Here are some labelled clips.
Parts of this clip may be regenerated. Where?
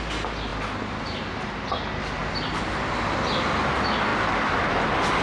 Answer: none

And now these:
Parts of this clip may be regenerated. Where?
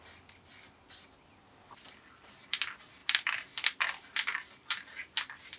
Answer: none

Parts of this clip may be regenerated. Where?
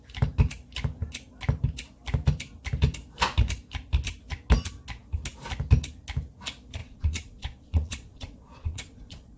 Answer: 6.8-9.4 (vocoder, Vocos)